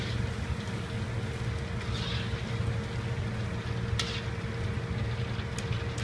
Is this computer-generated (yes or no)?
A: no